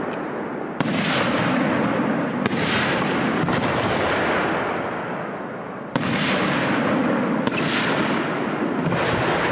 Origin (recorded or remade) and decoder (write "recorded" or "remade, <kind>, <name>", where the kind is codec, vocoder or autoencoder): recorded